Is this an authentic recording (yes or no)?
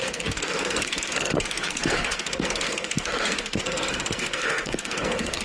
no